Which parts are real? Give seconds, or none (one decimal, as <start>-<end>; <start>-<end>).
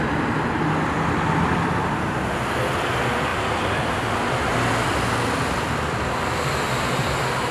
0.0-7.5